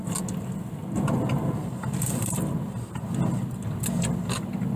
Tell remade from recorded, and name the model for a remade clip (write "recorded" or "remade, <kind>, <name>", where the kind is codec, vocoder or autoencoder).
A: recorded